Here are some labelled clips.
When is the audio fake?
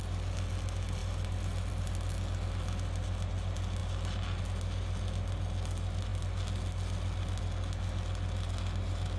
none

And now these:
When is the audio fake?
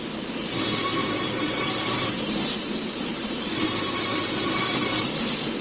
1.0-4.3 (vocoder, BigVGAN v2)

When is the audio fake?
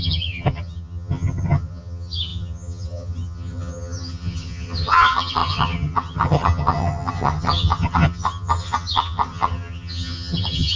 0.0-10.8 (vocoder, HiFi-GAN)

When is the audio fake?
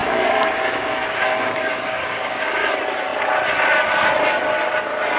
0.0-2.7 (codec, DAC)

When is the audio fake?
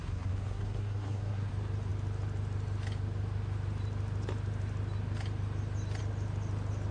0.0-1.5 (codec, SNAC)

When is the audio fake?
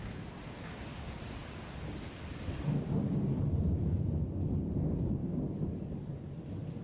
5.2-6.3 (codec, DAC)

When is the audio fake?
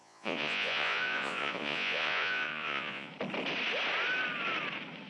0.0-3.1 (vocoder, Vocos)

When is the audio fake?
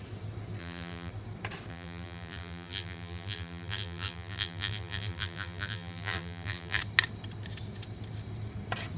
0.6-1.1 (vocoder, BigVGAN v2); 1.7-6.8